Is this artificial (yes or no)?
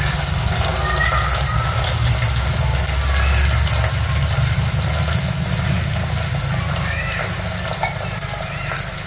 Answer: no